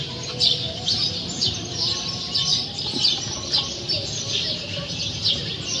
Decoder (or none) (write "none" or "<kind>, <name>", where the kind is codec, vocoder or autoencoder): none